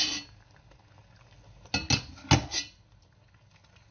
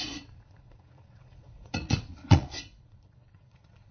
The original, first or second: first